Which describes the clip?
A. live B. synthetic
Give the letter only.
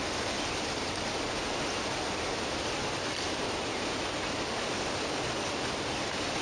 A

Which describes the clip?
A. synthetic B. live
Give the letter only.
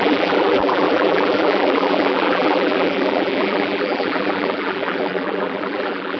A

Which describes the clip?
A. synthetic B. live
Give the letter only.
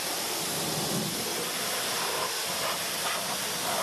B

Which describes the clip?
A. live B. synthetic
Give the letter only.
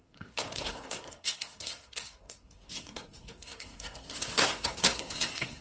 B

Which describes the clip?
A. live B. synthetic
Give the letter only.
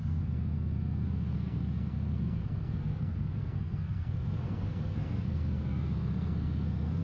B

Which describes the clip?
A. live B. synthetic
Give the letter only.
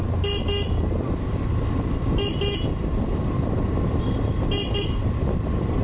A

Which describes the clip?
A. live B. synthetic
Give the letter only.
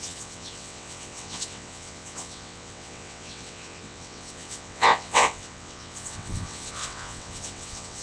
B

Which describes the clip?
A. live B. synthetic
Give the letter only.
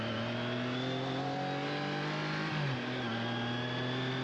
A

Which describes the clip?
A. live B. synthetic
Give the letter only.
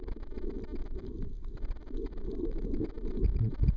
A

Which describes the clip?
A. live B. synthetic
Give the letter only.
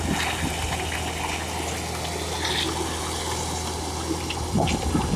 A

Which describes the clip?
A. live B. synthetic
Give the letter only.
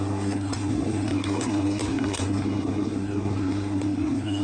B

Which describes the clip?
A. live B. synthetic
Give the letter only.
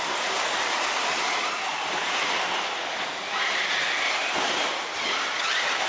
A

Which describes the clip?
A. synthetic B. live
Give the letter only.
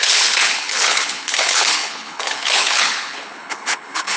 A